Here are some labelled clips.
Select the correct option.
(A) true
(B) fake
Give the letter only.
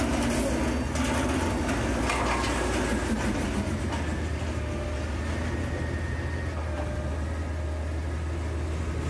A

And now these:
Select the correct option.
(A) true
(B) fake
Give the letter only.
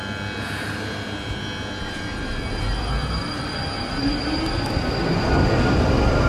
A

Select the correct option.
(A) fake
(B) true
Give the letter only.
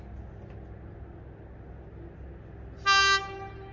B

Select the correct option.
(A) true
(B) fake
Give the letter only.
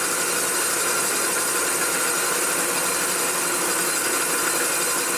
A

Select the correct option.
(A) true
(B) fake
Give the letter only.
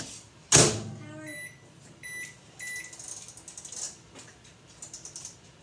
A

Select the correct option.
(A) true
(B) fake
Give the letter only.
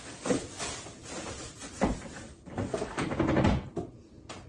A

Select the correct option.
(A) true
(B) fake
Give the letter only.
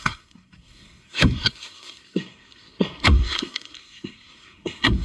B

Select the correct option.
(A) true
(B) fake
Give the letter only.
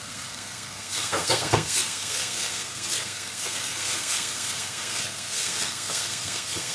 B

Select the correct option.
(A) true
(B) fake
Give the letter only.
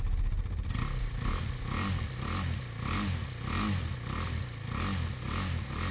A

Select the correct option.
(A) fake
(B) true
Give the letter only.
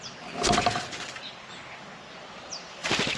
B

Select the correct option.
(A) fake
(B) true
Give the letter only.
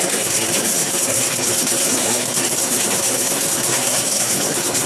A